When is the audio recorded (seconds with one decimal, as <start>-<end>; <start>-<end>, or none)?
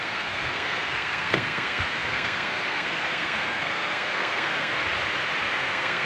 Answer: 4.8-5.4